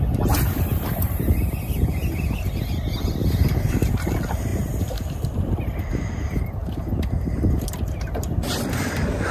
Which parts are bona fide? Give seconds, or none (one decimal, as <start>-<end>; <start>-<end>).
0.0-9.3